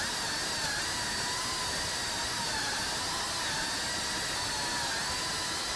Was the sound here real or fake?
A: real